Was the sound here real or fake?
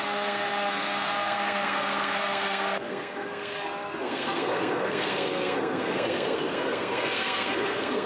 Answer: fake